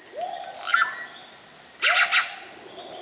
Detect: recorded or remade recorded